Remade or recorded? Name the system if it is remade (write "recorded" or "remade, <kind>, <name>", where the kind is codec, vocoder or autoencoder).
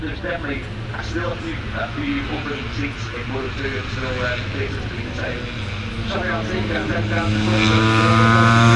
recorded